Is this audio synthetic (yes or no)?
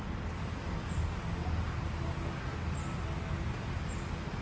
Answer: no